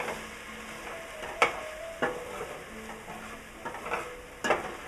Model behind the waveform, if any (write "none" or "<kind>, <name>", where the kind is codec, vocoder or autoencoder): none